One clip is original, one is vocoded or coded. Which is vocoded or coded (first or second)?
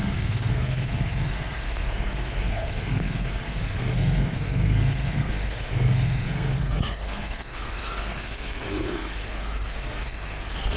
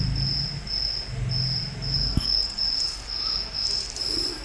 first